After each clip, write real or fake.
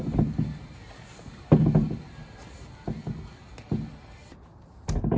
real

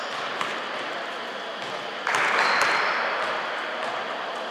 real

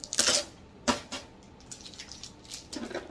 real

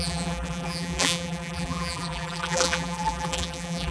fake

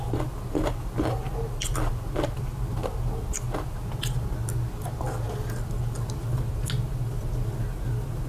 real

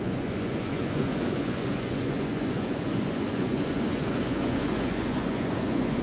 fake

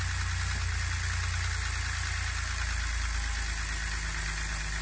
real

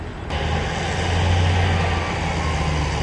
real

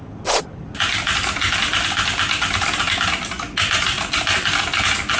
real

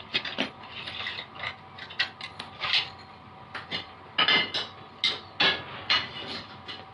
real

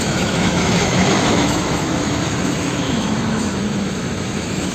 fake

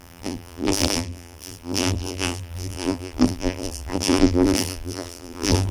fake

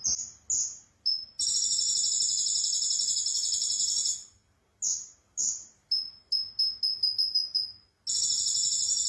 real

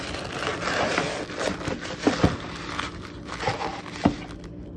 real